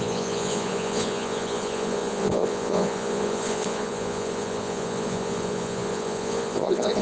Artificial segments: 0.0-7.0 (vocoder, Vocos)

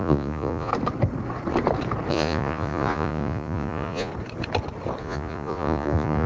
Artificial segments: 0.0-0.7 (vocoder, Vocos); 2.1-4.1; 5.0-6.3

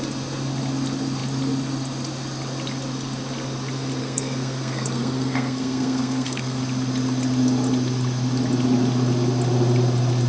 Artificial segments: 4.0-6.6 (codec, SNAC)